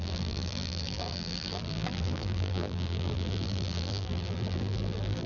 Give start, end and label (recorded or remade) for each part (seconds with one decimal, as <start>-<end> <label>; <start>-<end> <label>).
0.0-5.3 remade

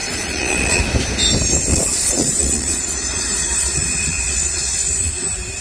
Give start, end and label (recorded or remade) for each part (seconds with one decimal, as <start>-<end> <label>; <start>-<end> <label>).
0.0-0.8 remade; 0.8-1.7 recorded; 1.7-5.1 remade; 5.1-5.6 recorded

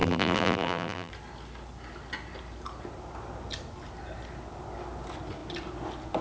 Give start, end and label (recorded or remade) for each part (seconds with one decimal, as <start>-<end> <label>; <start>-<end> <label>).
0.0-1.1 remade; 1.1-6.2 recorded

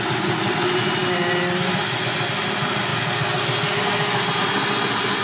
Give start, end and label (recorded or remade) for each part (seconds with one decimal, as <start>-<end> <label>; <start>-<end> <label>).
0.0-2.9 recorded; 2.9-3.8 remade; 3.8-5.2 recorded

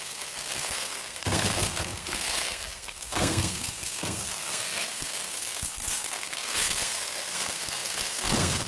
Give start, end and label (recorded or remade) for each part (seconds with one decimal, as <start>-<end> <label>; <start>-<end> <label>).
0.0-8.7 remade

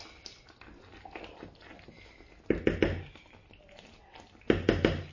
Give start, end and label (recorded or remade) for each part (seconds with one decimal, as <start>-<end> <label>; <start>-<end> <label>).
0.0-5.1 recorded

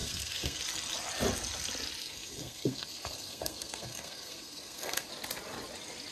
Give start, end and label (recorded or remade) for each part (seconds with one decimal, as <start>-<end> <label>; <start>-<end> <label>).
0.0-0.6 remade; 0.6-2.0 recorded; 2.0-5.1 remade; 5.1-6.1 recorded

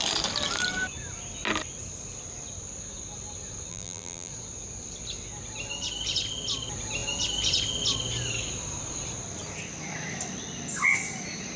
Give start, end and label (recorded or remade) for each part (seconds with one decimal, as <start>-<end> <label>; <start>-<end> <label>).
0.0-3.7 recorded; 3.7-4.3 remade; 4.3-11.6 recorded